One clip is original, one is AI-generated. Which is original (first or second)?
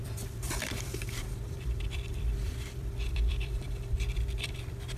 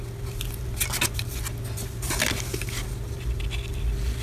second